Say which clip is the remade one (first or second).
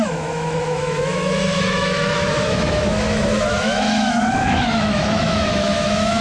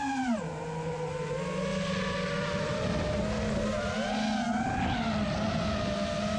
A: first